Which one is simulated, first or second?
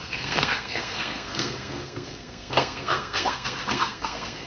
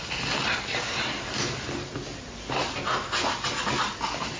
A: first